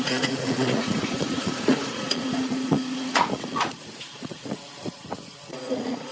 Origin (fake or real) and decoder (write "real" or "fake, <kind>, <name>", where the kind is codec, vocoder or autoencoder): fake, vocoder, Vocos